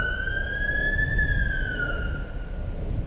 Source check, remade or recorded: recorded